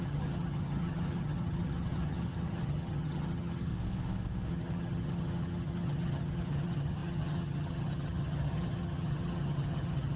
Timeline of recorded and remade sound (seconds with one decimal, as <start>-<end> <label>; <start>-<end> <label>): 0.0-3.7 remade; 3.7-4.5 recorded; 4.5-10.2 remade